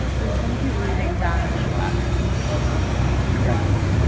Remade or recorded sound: recorded